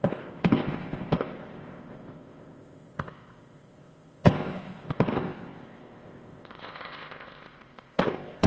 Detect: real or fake fake